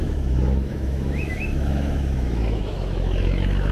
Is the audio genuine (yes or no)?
no